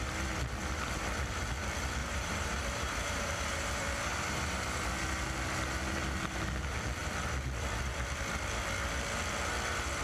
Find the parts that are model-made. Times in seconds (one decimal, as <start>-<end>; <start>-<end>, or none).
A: 2.0-4.8